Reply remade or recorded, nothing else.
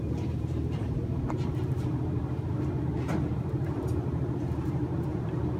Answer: remade